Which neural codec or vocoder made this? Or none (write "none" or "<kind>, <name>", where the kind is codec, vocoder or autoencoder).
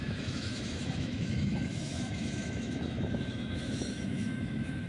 autoencoder, DAC-VAE